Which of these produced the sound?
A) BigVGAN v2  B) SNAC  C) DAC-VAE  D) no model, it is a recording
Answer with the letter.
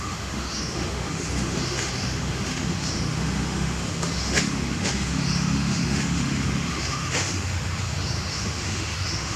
C